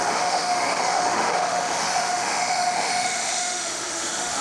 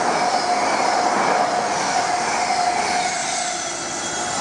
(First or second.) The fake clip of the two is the first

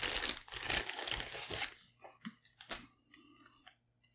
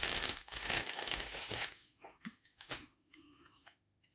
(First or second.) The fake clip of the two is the second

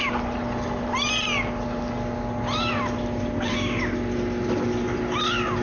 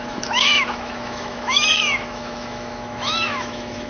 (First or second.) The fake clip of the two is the second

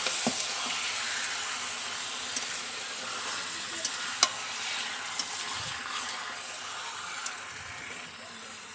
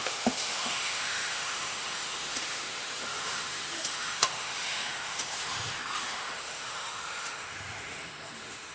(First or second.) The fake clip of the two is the second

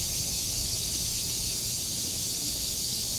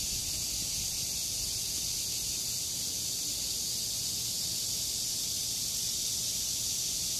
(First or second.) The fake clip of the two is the first